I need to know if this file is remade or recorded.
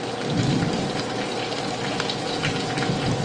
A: recorded